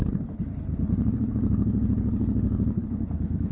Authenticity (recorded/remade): remade